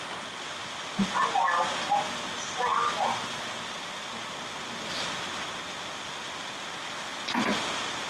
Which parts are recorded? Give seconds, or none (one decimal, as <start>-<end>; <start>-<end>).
0.0-8.1